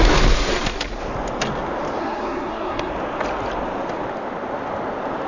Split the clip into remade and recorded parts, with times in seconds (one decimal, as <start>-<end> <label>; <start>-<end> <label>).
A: 0.0-2.0 recorded; 2.0-2.9 remade; 2.9-5.3 recorded